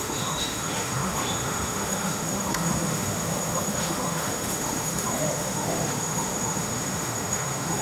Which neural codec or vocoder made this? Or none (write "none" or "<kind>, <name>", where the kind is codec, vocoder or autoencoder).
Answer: autoencoder, DAC-VAE